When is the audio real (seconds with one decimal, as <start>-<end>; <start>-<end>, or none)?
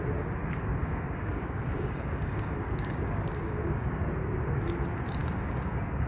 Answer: 0.0-0.4; 4.1-5.2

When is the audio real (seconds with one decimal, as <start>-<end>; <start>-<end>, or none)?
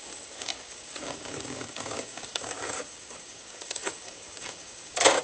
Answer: none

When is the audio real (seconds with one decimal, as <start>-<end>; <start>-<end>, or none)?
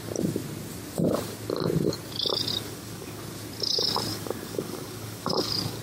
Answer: 0.0-2.5; 3.2-4.1